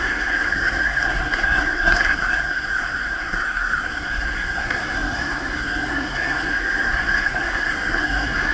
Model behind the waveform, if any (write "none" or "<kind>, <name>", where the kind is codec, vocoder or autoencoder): codec, SNAC